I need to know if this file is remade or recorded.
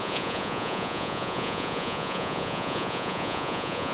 remade